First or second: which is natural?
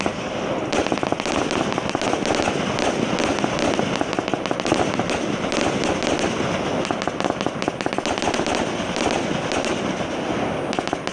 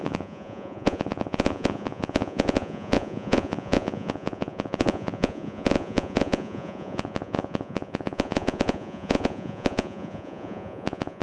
first